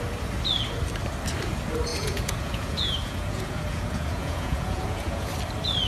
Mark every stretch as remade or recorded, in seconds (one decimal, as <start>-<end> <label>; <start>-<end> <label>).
0.0-1.9 recorded; 1.9-5.3 remade; 5.3-5.9 recorded